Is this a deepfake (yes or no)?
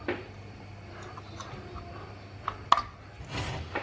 no